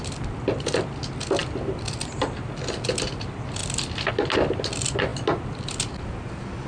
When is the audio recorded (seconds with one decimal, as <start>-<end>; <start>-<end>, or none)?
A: 0.0-6.7

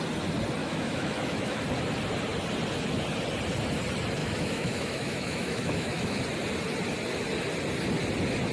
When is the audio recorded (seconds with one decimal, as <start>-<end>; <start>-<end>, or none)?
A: 0.0-0.6; 1.6-4.2; 6.2-8.5

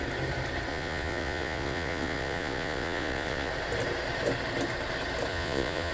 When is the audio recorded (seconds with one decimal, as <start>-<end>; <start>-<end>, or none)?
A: 0.0-0.7; 3.5-5.3

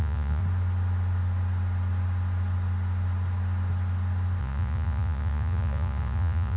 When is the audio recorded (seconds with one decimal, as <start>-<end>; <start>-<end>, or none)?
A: 0.4-4.4

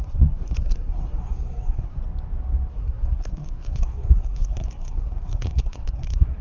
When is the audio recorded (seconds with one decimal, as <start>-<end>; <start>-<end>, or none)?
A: 2.0-2.7

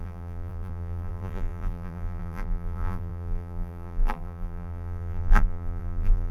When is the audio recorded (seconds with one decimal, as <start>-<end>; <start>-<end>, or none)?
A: none

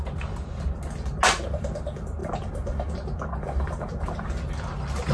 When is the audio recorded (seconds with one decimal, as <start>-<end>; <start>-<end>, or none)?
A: 0.0-5.1

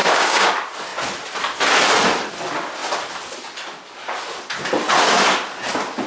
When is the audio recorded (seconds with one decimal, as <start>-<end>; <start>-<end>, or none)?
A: 0.5-6.1